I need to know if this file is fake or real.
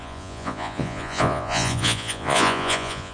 fake